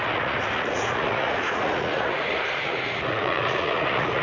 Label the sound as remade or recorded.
remade